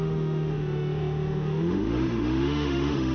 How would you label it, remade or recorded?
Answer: remade